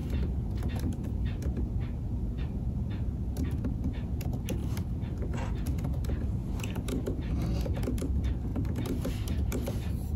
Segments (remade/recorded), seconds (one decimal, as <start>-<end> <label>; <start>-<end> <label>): 0.0-10.2 recorded